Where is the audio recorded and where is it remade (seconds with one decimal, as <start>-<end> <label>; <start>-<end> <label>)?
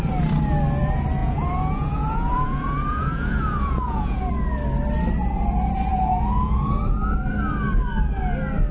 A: 0.0-1.2 recorded; 1.2-4.3 remade; 4.3-5.9 recorded; 5.9-6.8 remade; 6.8-8.7 recorded